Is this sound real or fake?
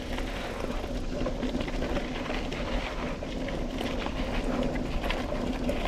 real